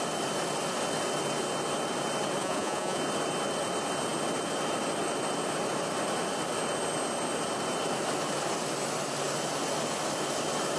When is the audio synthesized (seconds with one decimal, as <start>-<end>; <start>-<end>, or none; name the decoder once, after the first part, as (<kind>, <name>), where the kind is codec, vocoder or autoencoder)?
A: 2.4-3.0 (vocoder, Vocos)